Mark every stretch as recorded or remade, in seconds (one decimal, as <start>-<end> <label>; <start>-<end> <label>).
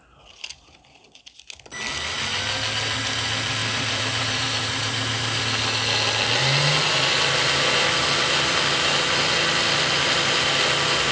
0.0-3.6 recorded; 3.6-5.4 remade; 5.4-11.1 recorded